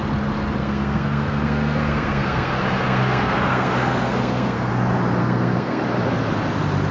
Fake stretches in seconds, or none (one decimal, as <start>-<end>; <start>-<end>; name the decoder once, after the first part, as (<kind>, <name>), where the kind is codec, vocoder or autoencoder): 0.6-4.7 (codec, SNAC); 5.2-5.8